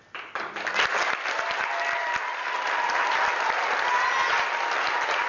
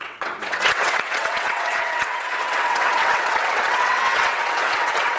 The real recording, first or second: first